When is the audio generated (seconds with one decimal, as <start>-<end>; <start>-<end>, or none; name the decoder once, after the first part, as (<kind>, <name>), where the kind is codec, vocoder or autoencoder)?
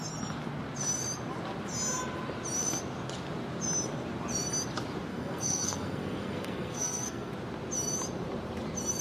5.1-7.3 (codec, SNAC)